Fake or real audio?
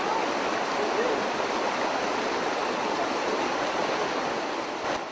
real